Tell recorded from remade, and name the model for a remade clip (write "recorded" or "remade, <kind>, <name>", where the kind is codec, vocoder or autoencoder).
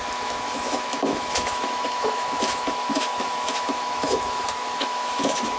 remade, autoencoder, DAC-VAE